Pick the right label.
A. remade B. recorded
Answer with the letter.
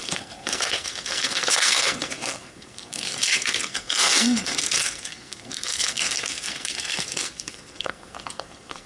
A